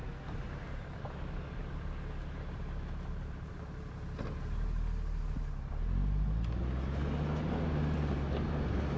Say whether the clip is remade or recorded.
recorded